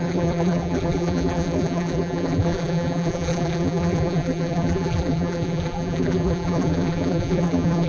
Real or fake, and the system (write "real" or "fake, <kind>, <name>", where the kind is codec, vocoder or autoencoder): fake, vocoder, BigVGAN v2